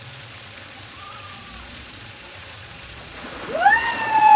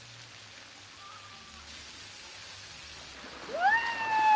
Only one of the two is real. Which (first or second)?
second